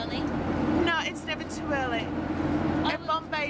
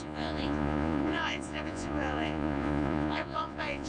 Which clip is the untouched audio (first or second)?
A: first